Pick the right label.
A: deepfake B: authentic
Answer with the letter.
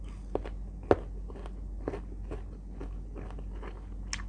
B